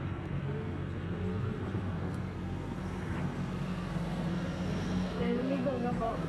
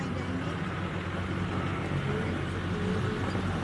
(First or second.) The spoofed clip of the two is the first